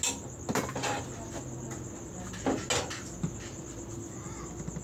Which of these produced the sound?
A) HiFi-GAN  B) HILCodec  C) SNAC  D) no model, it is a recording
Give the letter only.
D